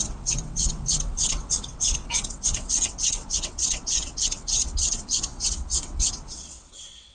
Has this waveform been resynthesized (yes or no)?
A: yes